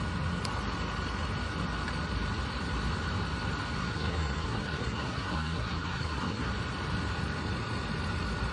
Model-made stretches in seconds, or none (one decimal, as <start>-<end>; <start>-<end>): 3.8-6.5